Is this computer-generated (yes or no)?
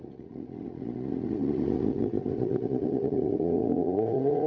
yes